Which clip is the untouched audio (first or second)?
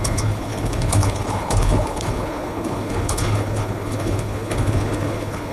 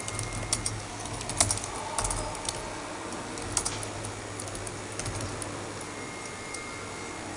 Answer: second